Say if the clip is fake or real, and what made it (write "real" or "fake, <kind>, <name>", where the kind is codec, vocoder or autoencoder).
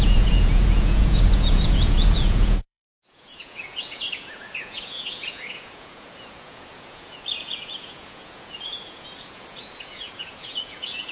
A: fake, vocoder, Vocos